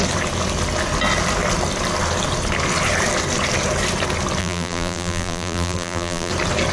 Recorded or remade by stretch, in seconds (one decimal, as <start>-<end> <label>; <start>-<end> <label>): 0.0-4.4 recorded; 4.4-6.3 remade; 6.3-6.7 recorded